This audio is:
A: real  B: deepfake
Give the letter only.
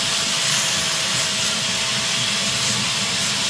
A